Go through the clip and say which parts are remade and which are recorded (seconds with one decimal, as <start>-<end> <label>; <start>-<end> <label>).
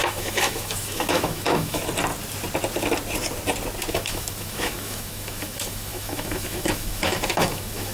0.0-1.8 remade; 1.8-3.9 recorded; 3.9-7.9 remade